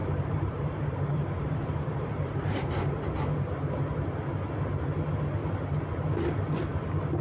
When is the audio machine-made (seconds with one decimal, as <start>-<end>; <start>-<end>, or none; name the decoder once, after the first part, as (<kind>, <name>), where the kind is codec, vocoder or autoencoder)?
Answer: 0.0-2.9 (vocoder, BigVGAN v2); 5.4-5.9